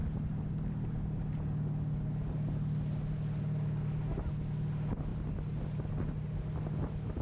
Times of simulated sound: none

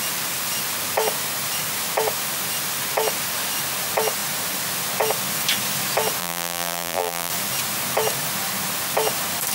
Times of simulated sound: 6.2-7.3 (vocoder, BigVGAN v2)